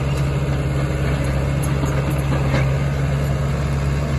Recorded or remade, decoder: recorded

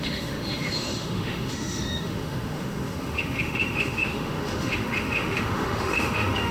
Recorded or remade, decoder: remade, autoencoder, DAC-VAE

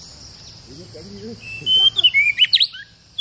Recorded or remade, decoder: recorded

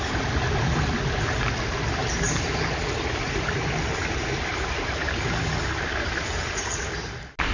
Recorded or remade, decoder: recorded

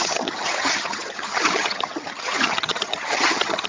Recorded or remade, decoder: remade, vocoder, HiFi-GAN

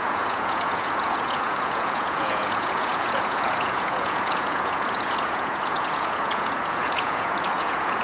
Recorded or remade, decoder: remade, vocoder, Vocos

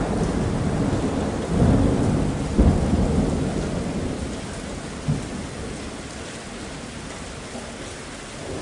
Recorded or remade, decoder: recorded